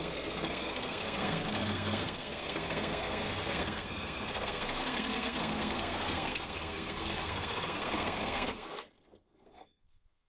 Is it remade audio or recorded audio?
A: remade